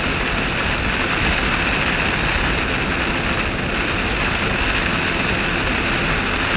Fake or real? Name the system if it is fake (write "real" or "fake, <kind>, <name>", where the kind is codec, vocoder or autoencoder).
real